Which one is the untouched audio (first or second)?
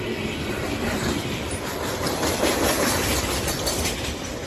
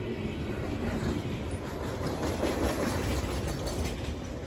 second